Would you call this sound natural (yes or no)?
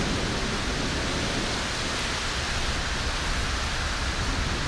yes